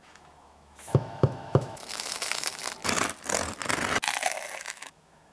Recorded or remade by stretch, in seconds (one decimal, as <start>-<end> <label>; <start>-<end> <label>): 0.0-2.6 remade; 2.6-4.6 recorded; 4.6-5.3 remade